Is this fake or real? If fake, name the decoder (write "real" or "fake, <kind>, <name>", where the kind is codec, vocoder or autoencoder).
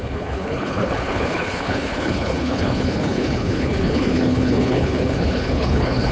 fake, codec, HILCodec